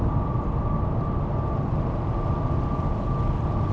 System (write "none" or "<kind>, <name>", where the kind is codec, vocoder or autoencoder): none